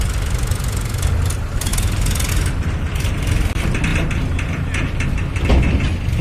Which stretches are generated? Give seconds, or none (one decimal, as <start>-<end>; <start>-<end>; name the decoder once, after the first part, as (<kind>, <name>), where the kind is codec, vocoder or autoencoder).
0.0-1.7 (vocoder, BigVGAN v2); 2.3-3.9